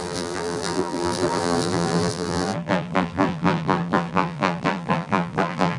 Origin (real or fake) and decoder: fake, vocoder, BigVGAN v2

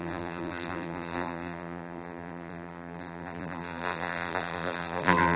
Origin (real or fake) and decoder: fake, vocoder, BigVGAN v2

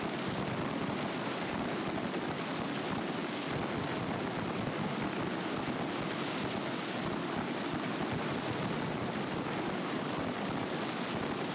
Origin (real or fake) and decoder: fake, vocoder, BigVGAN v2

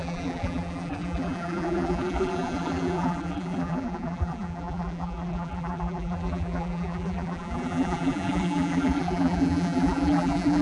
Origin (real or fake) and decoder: fake, vocoder, BigVGAN v2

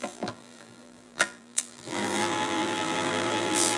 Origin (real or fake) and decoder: fake, vocoder, BigVGAN v2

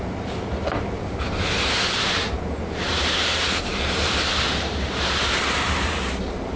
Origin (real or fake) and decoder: fake, vocoder, BigVGAN v2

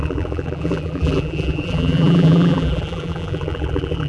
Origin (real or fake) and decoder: fake, vocoder, BigVGAN v2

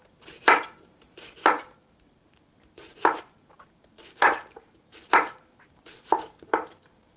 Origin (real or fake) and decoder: fake, vocoder, BigVGAN v2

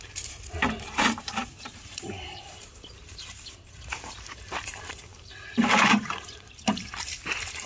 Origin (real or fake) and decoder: fake, vocoder, BigVGAN v2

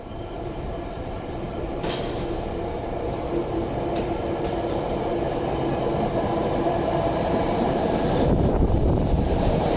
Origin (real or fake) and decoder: fake, vocoder, BigVGAN v2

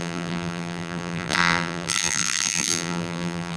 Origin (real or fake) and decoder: fake, vocoder, BigVGAN v2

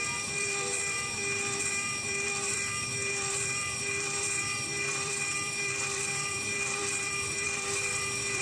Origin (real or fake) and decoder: fake, vocoder, BigVGAN v2